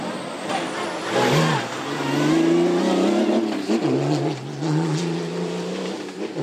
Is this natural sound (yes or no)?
yes